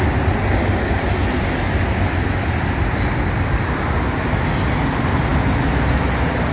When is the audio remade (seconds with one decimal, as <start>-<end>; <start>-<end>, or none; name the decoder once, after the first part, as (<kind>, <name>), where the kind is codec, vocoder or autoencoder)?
none